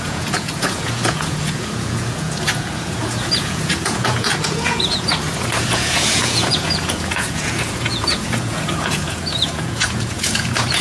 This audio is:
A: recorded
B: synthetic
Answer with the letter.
B